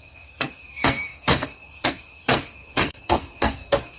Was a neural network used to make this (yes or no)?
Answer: yes